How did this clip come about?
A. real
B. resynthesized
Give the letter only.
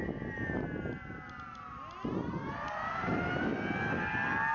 A